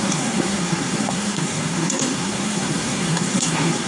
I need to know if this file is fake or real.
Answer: fake